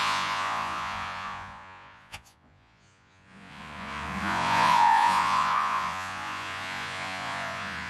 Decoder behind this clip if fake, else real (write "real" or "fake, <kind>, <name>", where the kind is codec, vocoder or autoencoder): fake, vocoder, Vocos